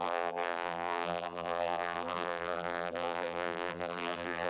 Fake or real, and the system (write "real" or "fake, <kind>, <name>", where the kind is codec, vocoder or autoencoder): fake, vocoder, BigVGAN v2